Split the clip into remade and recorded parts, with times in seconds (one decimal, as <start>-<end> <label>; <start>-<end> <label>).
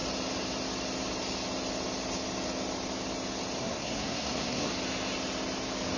0.0-3.6 recorded; 3.6-4.7 remade; 4.7-6.0 recorded